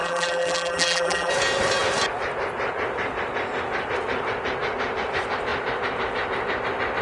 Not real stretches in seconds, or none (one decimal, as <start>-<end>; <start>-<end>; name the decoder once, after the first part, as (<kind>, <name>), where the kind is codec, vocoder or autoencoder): 0.0-1.3 (vocoder, BigVGAN v2)